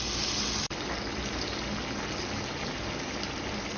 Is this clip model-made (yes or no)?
no